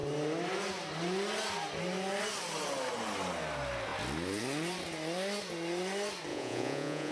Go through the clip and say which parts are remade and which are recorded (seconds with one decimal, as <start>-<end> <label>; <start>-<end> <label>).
0.0-6.3 recorded; 6.3-7.1 remade